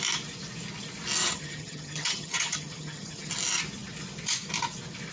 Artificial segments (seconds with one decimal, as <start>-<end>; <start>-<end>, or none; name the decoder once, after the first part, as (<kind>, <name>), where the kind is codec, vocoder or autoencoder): 1.2-3.3 (vocoder, HiFi-GAN)